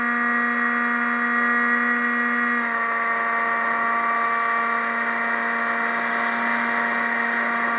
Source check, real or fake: real